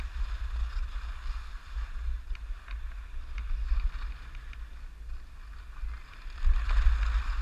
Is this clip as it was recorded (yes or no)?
yes